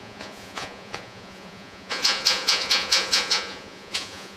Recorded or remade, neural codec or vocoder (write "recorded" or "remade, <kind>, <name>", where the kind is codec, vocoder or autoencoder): remade, vocoder, Vocos